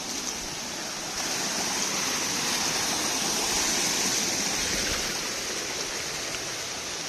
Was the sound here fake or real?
real